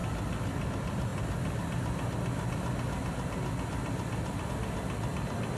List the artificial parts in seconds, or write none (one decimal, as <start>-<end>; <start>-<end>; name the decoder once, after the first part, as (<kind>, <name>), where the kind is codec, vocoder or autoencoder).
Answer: none